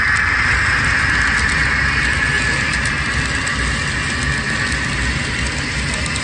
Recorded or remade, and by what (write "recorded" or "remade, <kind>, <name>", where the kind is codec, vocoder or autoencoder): recorded